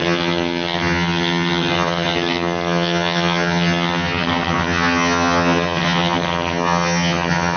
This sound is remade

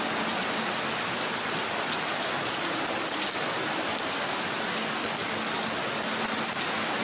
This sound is recorded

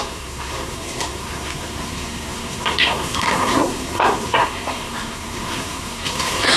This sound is remade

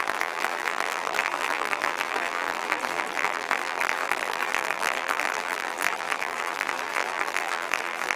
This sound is remade